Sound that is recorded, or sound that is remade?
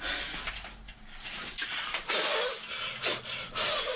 recorded